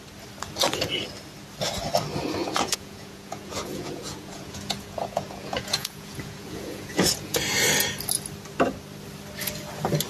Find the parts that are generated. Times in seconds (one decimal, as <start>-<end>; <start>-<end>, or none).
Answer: 2.4-7.4